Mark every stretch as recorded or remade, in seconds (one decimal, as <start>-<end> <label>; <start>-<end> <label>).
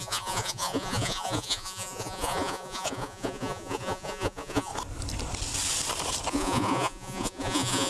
0.0-4.7 remade; 4.7-6.3 recorded; 6.3-7.9 remade